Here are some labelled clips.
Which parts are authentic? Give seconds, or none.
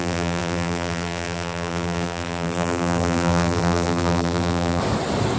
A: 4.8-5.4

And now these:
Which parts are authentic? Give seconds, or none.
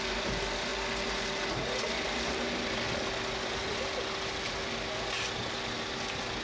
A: 0.0-6.4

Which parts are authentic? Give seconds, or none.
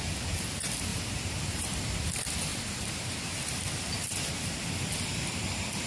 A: 0.0-0.9; 1.8-2.5; 3.5-5.9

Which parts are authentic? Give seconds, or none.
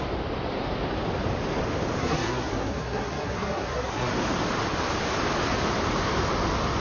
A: 0.0-2.0; 4.1-6.8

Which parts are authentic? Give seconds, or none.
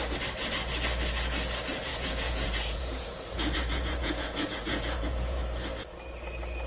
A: 0.0-1.9; 5.4-6.7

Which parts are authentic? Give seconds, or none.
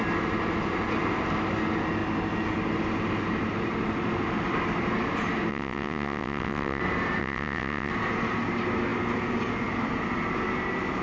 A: 0.0-5.5; 6.8-7.2; 7.9-11.0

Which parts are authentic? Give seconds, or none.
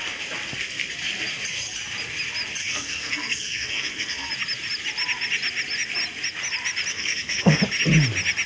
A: 0.0-2.6; 4.3-6.9; 7.6-8.5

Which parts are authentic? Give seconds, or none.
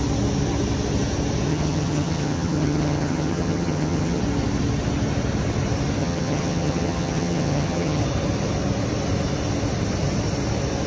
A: 0.0-1.5; 4.2-6.0; 8.0-10.9